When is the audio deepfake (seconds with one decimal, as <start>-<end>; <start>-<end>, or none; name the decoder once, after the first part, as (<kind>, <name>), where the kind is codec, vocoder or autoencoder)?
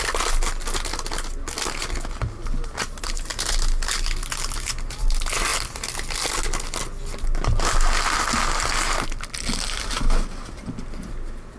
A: none